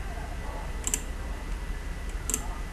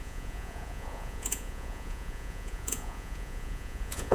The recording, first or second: first